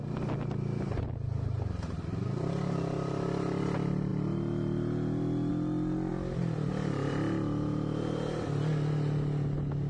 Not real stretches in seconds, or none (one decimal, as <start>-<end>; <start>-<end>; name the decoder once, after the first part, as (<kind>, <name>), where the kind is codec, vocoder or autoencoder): none